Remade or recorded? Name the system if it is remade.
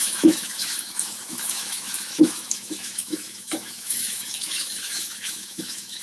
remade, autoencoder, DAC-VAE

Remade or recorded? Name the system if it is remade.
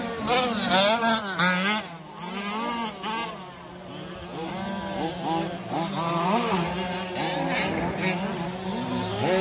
recorded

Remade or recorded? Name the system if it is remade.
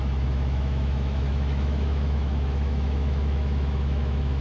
remade, autoencoder, DAC-VAE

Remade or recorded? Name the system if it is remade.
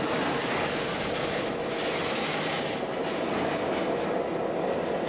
recorded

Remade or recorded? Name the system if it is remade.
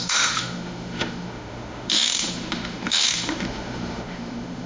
remade, autoencoder, DAC-VAE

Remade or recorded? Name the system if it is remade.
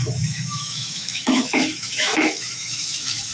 remade, autoencoder, DAC-VAE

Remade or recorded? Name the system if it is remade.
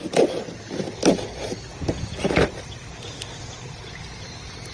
recorded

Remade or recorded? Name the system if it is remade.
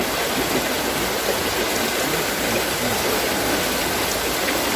recorded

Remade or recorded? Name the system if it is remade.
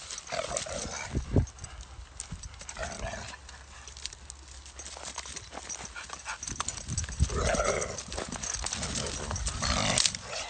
recorded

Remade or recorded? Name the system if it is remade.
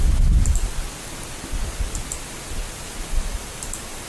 recorded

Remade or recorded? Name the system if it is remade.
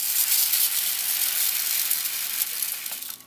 recorded